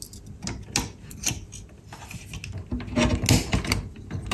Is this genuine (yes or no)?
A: yes